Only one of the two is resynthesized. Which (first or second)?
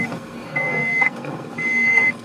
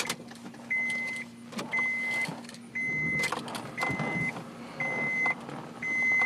first